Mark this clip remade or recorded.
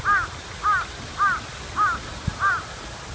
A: recorded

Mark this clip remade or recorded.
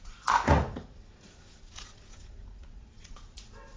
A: remade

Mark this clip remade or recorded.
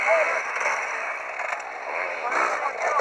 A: recorded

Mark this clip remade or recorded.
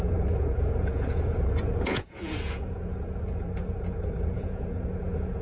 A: remade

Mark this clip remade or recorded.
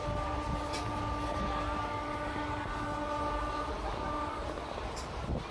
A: recorded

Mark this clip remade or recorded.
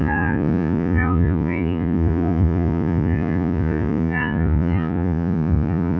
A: remade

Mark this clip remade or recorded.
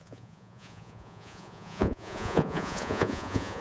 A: remade